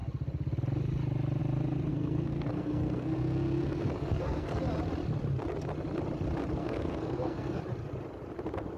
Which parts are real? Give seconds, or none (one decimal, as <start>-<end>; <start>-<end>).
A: 0.0-1.9; 4.6-6.6; 7.6-8.8